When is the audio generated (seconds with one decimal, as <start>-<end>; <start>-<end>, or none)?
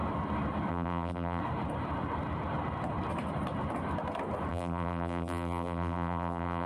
0.7-1.4; 4.5-6.7